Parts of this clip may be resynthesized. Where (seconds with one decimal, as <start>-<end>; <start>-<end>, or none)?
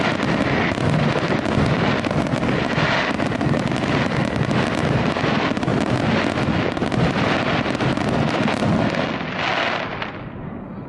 none